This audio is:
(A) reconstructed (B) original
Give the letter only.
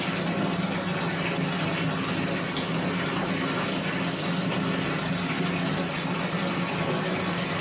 B